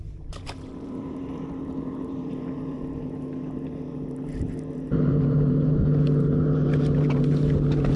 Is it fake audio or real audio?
fake